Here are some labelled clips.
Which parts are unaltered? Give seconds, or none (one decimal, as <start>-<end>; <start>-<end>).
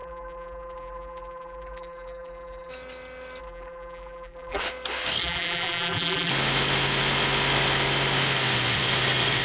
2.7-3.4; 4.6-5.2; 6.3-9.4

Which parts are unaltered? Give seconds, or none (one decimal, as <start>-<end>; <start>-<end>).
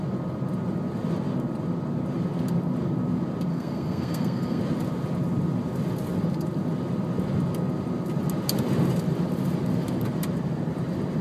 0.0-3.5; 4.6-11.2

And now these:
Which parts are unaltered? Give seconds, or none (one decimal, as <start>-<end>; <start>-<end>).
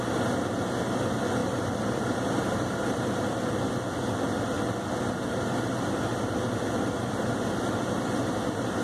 0.0-1.4; 3.5-8.8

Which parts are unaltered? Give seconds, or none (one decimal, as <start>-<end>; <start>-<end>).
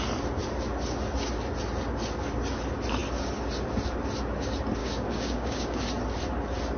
0.0-4.8; 5.8-6.8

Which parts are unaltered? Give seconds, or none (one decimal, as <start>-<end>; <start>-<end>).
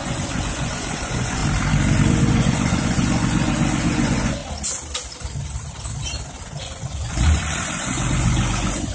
1.4-2.1; 4.4-6.4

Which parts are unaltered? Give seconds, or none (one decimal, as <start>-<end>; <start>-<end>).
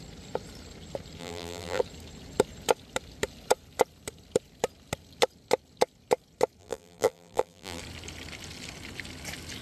0.0-1.2; 1.8-6.6; 7.8-9.6